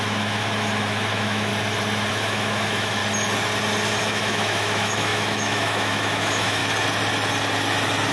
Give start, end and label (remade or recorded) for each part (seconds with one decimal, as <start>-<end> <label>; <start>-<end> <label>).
0.0-1.5 remade; 1.5-2.1 recorded; 2.1-3.0 remade; 3.0-4.0 recorded; 4.0-6.6 remade; 6.6-8.1 recorded